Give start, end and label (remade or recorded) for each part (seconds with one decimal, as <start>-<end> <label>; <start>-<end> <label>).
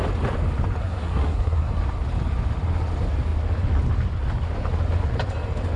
0.0-0.8 recorded; 0.8-1.7 remade; 1.7-5.8 recorded